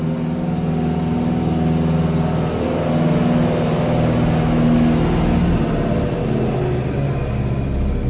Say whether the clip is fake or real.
real